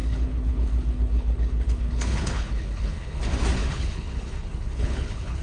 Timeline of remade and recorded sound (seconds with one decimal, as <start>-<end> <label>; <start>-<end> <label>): 0.0-3.2 remade; 3.2-3.6 recorded; 3.6-5.4 remade